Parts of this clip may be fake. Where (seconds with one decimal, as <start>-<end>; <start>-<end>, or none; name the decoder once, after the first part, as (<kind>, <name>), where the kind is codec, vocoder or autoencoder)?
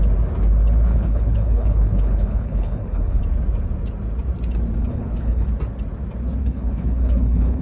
0.9-3.2 (codec, HILCodec); 4.8-5.5; 6.4-7.6